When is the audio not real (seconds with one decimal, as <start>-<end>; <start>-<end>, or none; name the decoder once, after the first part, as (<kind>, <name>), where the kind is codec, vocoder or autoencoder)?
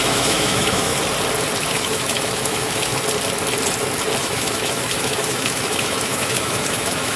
0.0-0.9 (autoencoder, DAC-VAE); 1.7-2.9; 4.2-7.2